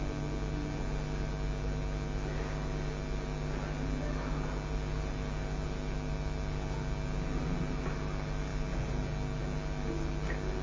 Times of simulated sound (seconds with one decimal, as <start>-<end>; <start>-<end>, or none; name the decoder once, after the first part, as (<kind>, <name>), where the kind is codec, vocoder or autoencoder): none